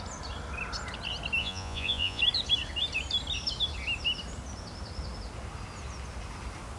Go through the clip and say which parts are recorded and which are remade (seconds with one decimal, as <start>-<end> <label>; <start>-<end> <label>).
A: 0.0-1.4 recorded; 1.4-2.2 remade; 2.2-6.8 recorded